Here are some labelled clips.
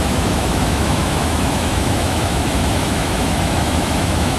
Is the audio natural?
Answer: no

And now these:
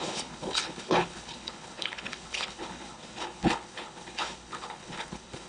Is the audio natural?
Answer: no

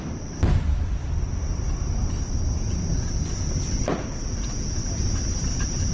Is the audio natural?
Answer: yes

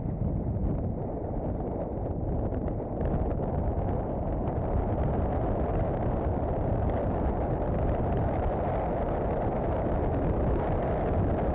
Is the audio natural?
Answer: yes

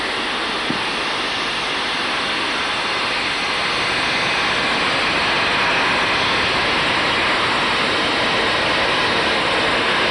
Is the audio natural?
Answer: yes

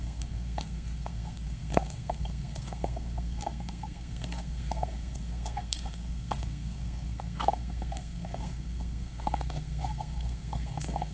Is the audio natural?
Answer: no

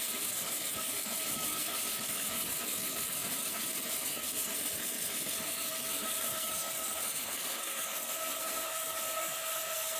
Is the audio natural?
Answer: no